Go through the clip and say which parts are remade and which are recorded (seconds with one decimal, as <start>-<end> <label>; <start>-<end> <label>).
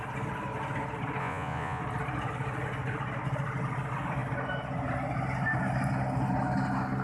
0.0-1.2 recorded; 1.2-1.8 remade; 1.8-7.0 recorded